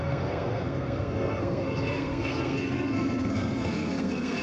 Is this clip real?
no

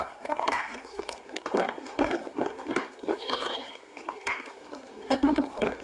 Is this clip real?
no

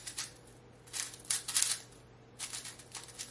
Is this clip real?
yes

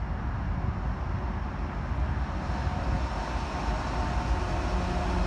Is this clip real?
yes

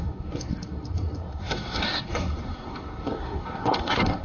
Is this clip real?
no